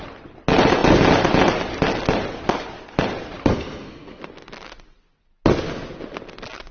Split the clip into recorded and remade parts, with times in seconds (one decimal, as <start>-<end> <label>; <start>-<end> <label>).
0.0-3.5 recorded; 3.5-4.2 remade; 4.2-6.7 recorded